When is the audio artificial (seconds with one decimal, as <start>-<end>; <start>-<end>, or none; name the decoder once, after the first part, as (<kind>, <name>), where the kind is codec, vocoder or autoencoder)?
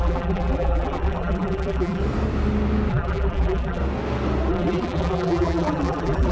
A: 0.0-2.0 (vocoder, BigVGAN v2); 2.9-3.8; 4.5-6.3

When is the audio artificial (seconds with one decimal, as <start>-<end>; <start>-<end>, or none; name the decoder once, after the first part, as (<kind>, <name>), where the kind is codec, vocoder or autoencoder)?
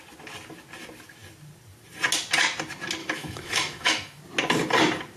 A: 3.0-4.2 (autoencoder, DAC-VAE)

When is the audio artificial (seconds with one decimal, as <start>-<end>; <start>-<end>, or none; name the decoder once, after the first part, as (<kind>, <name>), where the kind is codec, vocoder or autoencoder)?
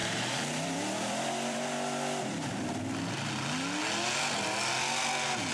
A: 0.0-3.3 (vocoder, BigVGAN v2)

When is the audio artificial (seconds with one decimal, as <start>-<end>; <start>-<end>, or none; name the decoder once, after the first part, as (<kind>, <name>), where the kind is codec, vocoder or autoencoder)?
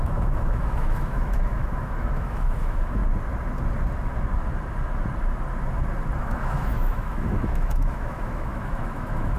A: 0.0-3.0 (autoencoder, DAC-VAE); 6.2-9.4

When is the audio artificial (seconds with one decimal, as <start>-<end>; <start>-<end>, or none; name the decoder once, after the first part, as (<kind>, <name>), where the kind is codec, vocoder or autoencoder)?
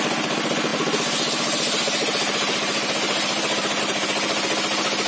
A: none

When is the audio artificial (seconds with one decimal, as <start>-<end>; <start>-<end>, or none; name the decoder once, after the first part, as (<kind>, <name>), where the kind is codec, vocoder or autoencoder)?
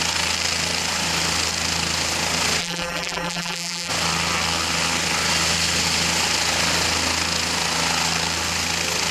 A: 2.6-3.9 (vocoder, BigVGAN v2)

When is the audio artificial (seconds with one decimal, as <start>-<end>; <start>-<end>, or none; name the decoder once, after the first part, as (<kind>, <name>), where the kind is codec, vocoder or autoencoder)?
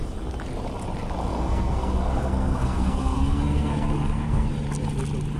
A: 1.3-4.5 (codec, SNAC)